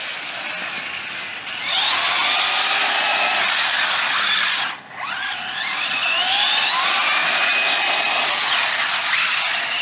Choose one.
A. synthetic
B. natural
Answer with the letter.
B